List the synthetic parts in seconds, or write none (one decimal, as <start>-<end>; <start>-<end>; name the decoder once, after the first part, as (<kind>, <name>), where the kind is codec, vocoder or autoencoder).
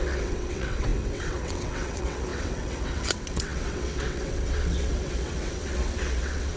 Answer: 0.0-6.6 (vocoder, WaveNeXt)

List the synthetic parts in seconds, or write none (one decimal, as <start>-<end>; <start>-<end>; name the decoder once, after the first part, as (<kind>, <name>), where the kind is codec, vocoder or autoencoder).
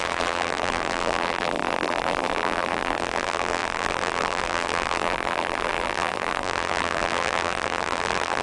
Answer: 0.0-8.4 (vocoder, BigVGAN v2)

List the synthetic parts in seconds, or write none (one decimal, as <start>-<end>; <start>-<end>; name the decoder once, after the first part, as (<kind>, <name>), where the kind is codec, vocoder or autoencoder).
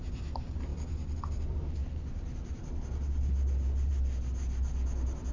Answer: none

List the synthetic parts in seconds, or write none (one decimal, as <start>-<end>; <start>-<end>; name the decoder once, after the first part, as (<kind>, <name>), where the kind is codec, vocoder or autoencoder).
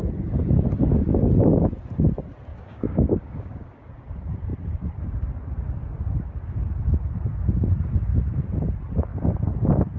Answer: 2.5-3.9 (codec, DAC)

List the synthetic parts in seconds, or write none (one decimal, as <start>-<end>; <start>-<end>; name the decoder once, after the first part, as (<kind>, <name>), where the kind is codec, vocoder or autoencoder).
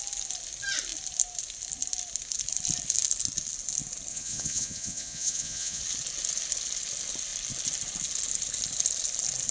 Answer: 4.1-5.8 (vocoder, Vocos)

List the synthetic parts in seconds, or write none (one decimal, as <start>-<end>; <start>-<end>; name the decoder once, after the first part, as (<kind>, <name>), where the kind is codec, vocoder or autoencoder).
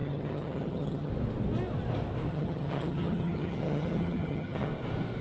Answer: 0.0-1.1 (vocoder, HiFi-GAN); 2.3-4.7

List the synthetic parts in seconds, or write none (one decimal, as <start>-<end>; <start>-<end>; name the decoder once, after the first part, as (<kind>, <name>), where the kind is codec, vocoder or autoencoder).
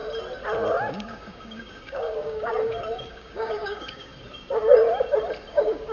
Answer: 0.9-2.5 (codec, DAC); 3.1-4.1; 5.5-5.9